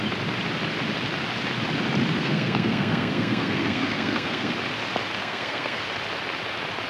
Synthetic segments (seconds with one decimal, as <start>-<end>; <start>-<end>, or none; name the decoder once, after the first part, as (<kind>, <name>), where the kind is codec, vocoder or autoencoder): 2.2-4.5 (codec, SNAC); 5.2-5.8